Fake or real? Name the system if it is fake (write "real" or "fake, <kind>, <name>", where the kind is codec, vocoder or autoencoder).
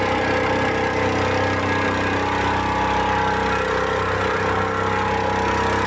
real